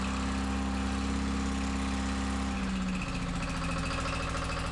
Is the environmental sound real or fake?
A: real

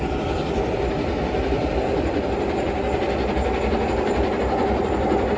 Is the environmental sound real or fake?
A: real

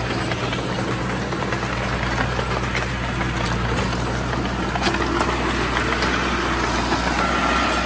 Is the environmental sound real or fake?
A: real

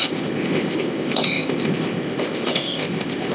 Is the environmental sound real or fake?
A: fake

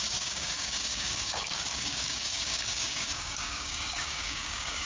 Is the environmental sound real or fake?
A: fake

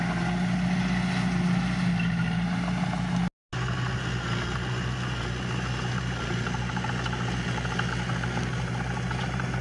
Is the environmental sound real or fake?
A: real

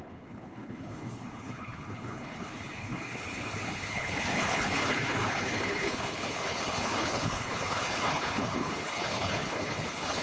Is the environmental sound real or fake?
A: fake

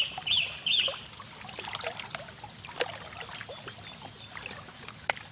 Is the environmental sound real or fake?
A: real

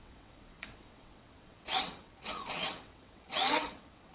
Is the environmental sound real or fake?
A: fake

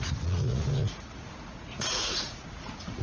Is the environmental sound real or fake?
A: fake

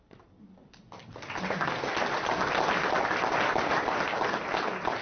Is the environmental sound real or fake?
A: real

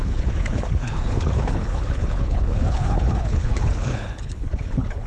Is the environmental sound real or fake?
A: fake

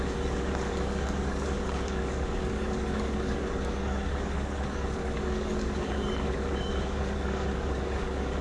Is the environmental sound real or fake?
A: fake